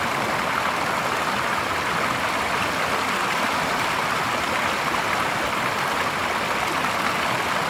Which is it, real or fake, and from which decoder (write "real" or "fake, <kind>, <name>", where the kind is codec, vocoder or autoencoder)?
real